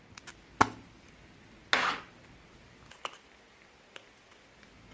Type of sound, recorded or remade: recorded